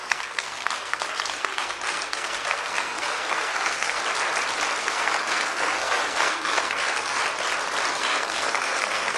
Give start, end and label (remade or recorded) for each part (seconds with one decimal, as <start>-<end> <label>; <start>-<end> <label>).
0.0-4.0 remade; 4.0-4.8 recorded; 4.8-7.2 remade; 7.2-7.9 recorded; 7.9-9.2 remade